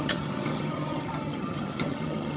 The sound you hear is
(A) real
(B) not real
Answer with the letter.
B